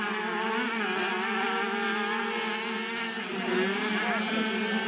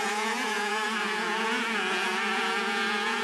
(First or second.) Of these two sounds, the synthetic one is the second